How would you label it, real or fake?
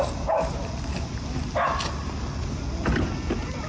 real